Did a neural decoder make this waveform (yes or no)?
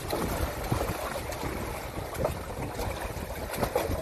no